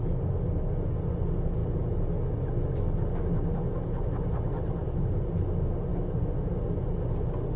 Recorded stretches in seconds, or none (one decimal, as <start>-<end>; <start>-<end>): 0.0-7.6